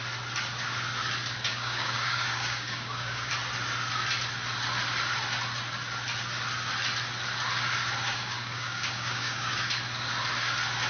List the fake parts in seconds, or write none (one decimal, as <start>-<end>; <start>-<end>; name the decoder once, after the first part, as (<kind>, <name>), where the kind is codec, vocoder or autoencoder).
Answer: 1.5-3.3 (codec, DAC); 8.1-9.7

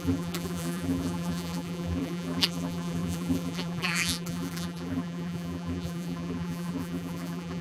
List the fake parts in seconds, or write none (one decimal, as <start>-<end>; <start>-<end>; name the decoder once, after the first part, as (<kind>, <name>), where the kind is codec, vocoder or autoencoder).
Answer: 0.0-7.6 (vocoder, BigVGAN v2)